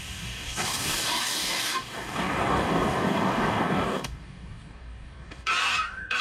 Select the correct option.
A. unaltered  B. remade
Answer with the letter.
B